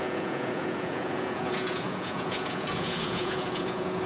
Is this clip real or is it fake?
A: fake